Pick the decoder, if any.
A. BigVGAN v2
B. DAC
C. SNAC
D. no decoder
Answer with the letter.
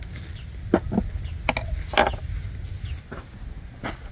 D